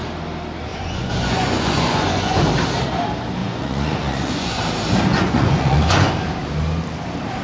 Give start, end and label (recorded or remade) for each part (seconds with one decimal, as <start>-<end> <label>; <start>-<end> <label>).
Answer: 0.0-0.7 recorded; 0.7-2.4 remade; 2.4-3.4 recorded; 3.4-4.6 remade; 4.6-5.1 recorded; 5.1-6.1 remade; 6.1-7.4 recorded